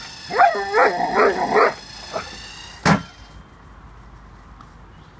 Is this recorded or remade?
recorded